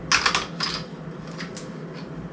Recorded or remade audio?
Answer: recorded